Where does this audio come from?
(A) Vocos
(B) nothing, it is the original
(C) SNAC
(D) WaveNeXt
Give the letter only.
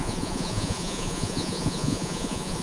A